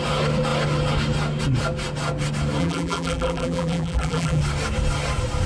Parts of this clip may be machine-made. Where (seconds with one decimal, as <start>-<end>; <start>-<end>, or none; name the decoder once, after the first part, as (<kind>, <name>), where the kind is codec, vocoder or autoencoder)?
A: 2.6-4.4 (vocoder, BigVGAN v2)